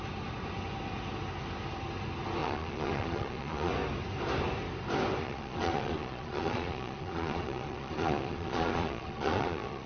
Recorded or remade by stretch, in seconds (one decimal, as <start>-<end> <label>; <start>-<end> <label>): 0.0-2.4 recorded; 2.4-3.7 remade; 3.7-5.2 recorded; 5.2-9.9 remade

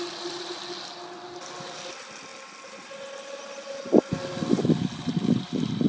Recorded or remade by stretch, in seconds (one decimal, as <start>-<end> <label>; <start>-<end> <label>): 0.0-5.9 recorded

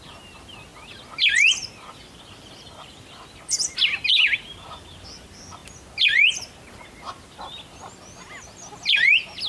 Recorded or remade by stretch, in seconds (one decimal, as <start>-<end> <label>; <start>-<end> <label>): 0.0-9.5 recorded

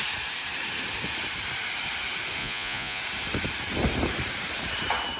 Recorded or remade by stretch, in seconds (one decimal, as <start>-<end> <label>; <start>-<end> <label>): 0.0-2.4 recorded; 2.4-3.0 remade; 3.0-5.2 recorded

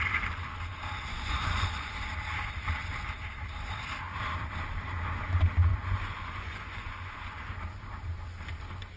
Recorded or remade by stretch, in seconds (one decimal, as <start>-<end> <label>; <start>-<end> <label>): 0.0-1.1 recorded; 1.1-2.0 remade; 2.0-5.7 recorded; 5.7-7.6 remade; 7.6-9.0 recorded

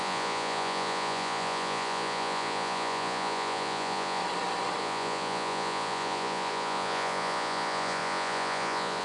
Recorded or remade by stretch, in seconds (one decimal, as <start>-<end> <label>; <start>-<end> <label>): 0.0-4.2 remade; 4.2-4.8 recorded; 4.8-9.0 remade

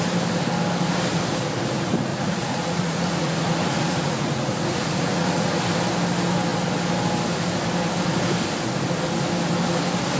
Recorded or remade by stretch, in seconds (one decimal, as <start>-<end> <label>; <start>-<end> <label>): 0.0-2.1 recorded; 2.1-5.6 remade; 5.6-10.2 recorded

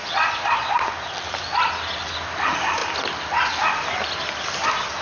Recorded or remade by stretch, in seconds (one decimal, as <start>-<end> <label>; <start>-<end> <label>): 0.0-0.9 remade; 0.9-5.0 recorded